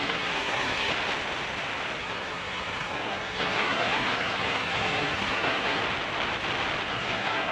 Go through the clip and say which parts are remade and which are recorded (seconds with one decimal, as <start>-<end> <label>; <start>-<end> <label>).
0.0-0.9 remade; 0.9-2.0 recorded; 2.0-5.8 remade; 5.8-6.9 recorded; 6.9-7.5 remade